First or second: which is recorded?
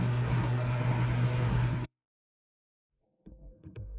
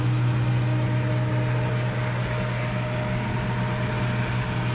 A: second